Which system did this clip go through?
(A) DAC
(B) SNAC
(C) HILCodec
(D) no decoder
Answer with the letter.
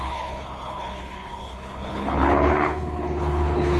C